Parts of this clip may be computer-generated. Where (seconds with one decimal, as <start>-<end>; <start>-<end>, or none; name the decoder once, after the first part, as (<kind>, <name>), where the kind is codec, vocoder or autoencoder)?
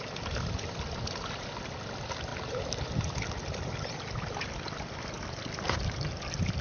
2.3-3.2 (vocoder, BigVGAN v2)